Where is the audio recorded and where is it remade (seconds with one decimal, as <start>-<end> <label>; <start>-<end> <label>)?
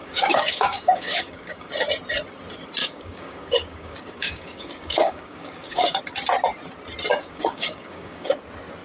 0.0-1.7 remade; 1.7-2.8 recorded; 2.8-6.0 remade; 6.0-7.1 recorded; 7.1-8.4 remade; 8.4-8.8 recorded